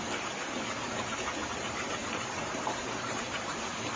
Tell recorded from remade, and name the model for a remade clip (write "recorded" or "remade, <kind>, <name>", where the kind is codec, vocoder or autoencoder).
remade, vocoder, BigVGAN v2